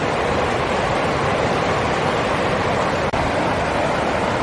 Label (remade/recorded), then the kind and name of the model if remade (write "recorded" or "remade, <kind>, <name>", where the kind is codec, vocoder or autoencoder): recorded